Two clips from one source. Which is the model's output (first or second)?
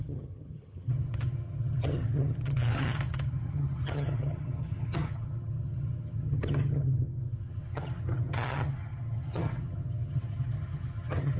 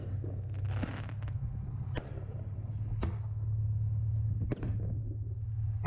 first